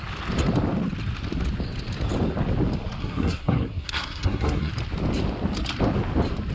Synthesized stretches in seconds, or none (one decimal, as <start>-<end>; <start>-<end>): 3.0-4.7

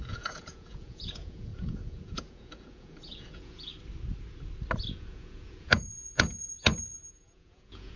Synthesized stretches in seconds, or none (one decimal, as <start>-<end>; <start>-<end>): 0.0-3.7; 4.9-8.0

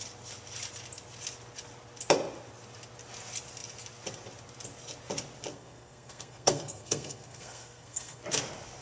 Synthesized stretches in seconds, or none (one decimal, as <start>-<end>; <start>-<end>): 5.5-8.2

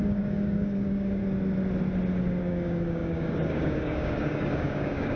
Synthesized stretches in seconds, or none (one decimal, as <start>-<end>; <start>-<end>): 0.0-1.2; 2.4-5.2

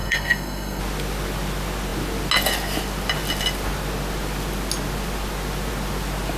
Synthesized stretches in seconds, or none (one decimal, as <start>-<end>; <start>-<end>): 0.0-0.8

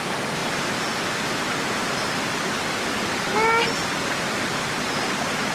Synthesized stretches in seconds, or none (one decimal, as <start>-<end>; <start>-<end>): none

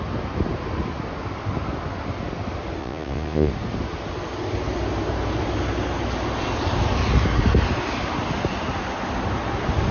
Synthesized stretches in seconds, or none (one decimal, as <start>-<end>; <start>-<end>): 2.8-3.5